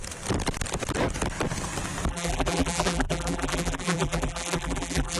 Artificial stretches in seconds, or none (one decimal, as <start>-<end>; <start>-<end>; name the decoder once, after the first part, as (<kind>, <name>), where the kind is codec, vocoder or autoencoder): 2.1-5.2 (vocoder, BigVGAN v2)